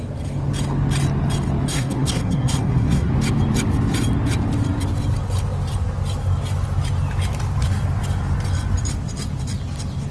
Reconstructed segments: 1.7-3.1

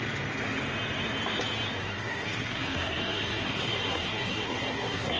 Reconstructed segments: 1.8-5.2